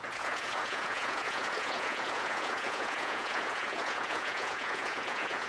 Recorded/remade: remade